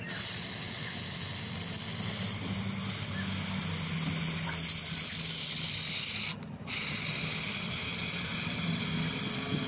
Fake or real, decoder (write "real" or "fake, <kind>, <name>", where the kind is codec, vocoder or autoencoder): real